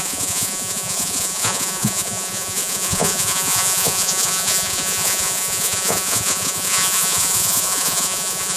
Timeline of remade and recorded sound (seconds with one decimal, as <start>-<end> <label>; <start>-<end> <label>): 0.0-8.6 remade